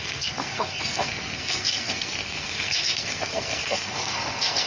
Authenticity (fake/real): fake